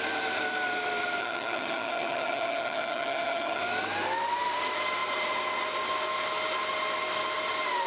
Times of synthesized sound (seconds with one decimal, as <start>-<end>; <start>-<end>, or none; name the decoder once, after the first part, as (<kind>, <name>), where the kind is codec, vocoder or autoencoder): 1.2-3.6 (vocoder, HiFi-GAN)